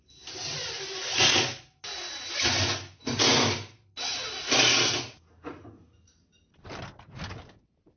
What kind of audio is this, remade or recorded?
recorded